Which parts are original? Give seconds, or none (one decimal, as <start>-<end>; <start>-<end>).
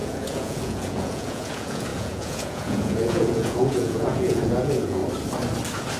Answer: 5.0-6.0